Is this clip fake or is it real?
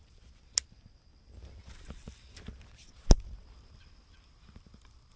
real